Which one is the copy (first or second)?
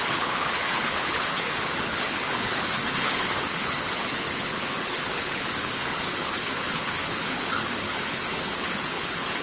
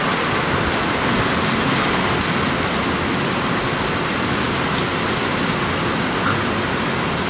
first